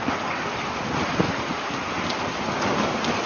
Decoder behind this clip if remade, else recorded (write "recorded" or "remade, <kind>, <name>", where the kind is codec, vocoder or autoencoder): recorded